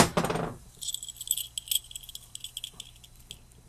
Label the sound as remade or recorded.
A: recorded